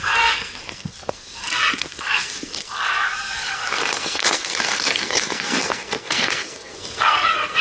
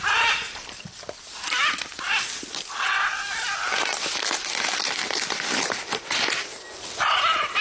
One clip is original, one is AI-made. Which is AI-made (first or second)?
first